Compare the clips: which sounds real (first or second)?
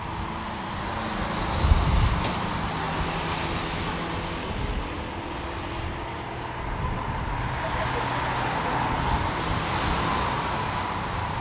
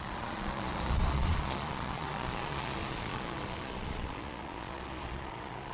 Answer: first